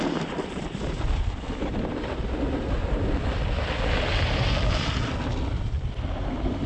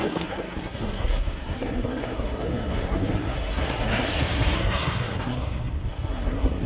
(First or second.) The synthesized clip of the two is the second